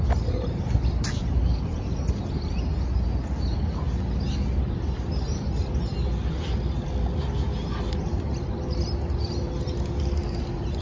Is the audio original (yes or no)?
yes